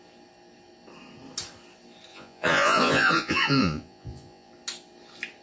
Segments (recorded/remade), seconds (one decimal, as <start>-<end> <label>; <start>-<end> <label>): 0.0-2.1 recorded; 2.1-4.5 remade; 4.5-5.4 recorded